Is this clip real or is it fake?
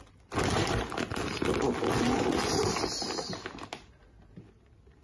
real